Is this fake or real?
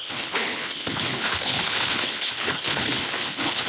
fake